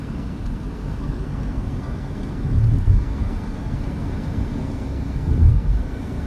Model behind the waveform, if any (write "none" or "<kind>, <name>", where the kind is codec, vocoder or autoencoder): codec, SNAC